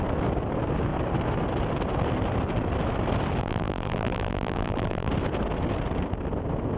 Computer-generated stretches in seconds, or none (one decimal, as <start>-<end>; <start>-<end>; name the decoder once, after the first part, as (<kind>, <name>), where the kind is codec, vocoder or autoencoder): 3.4-5.1 (vocoder, BigVGAN v2)